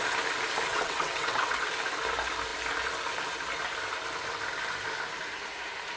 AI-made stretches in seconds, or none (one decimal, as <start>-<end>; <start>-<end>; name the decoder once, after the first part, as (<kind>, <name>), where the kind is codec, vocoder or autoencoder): 0.7-1.7 (vocoder, WaveNeXt)